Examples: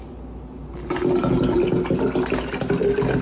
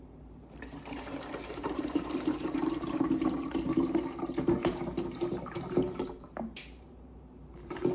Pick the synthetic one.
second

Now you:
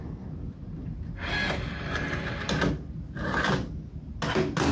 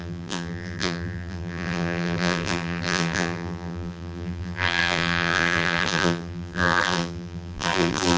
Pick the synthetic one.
second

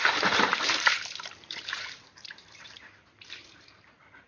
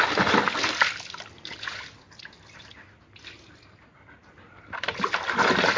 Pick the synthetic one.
first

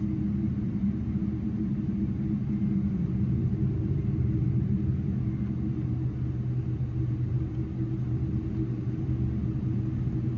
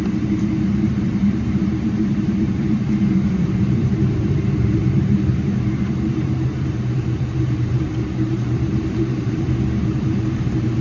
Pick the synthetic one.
second